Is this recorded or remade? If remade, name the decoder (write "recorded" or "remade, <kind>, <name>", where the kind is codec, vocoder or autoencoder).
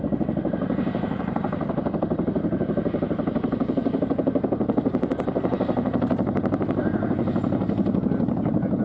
remade, vocoder, BigVGAN v2